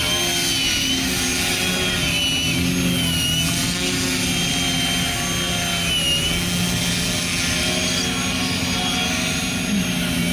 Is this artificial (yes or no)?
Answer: no